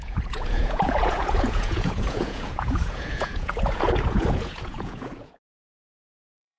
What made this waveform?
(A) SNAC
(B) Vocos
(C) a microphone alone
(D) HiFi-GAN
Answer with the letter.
B